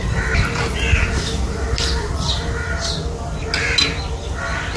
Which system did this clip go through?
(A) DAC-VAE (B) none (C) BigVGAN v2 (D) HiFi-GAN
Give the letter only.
B